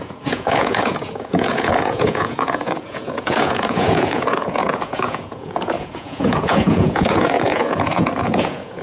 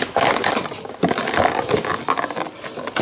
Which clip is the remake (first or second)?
first